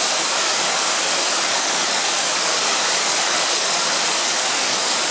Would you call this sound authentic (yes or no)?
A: no